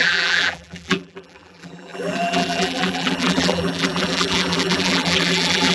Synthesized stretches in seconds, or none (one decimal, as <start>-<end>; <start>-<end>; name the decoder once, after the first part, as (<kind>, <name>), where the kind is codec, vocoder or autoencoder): 0.0-5.7 (vocoder, BigVGAN v2)